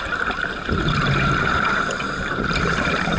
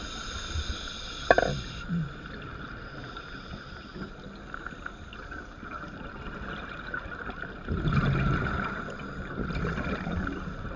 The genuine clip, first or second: second